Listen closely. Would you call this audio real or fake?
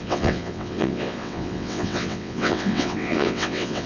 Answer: fake